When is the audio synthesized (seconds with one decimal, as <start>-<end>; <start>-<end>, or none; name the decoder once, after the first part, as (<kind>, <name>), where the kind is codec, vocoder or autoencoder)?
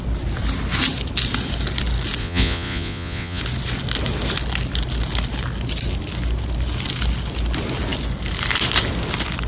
2.2-3.4 (vocoder, Vocos)